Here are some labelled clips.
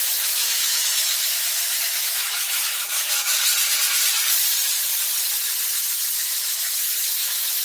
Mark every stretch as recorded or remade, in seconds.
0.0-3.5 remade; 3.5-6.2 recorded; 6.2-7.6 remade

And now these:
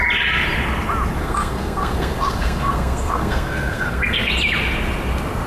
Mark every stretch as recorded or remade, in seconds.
0.0-1.2 recorded; 1.2-4.3 remade; 4.3-5.5 recorded

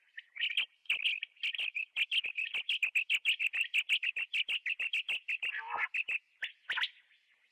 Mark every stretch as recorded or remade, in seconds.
0.0-7.5 recorded

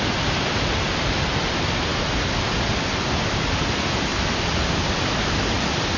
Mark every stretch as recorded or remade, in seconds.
0.0-6.0 recorded